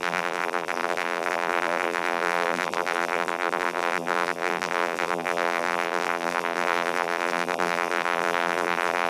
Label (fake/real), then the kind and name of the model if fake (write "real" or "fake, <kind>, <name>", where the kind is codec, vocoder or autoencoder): fake, vocoder, BigVGAN v2